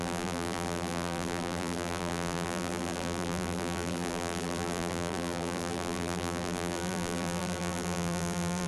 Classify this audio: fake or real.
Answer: fake